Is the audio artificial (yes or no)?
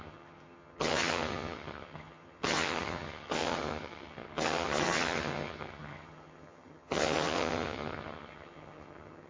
yes